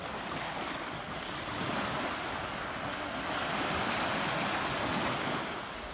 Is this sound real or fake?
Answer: real